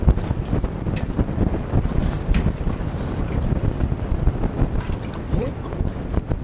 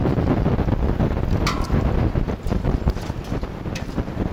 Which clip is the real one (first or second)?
second